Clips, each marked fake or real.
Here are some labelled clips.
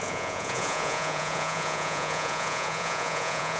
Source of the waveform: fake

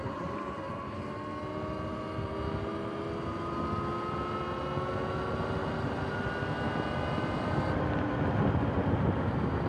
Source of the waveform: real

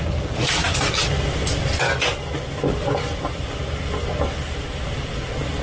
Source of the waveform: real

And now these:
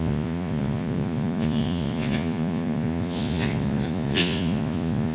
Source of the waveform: fake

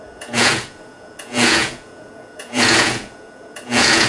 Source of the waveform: fake